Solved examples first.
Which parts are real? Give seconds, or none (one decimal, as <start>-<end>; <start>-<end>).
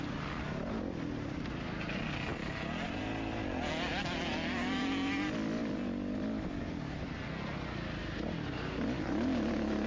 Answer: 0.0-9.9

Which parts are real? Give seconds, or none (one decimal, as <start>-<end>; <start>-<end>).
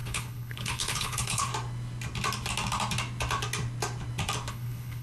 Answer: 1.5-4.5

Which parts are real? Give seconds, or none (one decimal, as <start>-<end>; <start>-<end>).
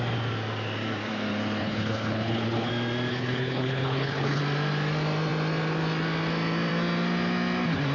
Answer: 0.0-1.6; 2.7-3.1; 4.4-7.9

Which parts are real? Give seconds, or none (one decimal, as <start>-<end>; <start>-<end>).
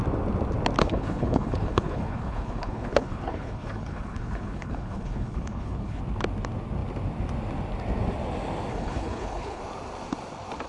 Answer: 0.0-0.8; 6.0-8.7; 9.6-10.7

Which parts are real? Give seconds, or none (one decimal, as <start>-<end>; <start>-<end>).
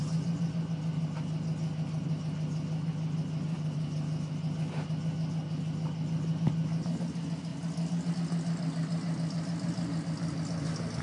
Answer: 0.0-11.0